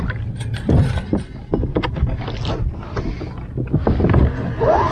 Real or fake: real